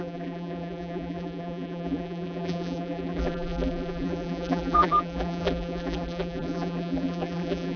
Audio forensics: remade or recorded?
remade